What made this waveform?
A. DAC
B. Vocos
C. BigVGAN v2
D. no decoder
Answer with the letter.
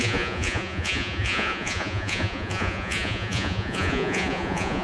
B